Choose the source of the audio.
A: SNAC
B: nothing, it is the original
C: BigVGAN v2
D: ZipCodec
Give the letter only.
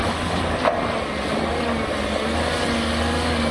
B